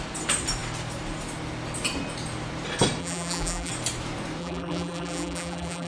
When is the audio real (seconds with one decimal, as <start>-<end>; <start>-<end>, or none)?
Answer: 0.0-3.0; 3.7-4.4